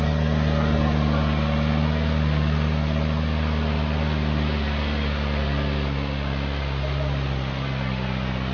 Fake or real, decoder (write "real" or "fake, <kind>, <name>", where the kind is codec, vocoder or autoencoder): real